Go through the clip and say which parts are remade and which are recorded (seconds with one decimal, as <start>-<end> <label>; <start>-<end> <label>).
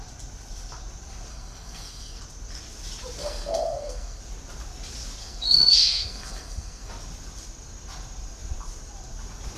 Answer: 0.0-1.3 recorded; 1.3-2.2 remade; 2.2-3.2 recorded; 3.2-4.2 remade; 4.2-5.2 recorded; 5.2-6.9 remade; 6.9-9.6 recorded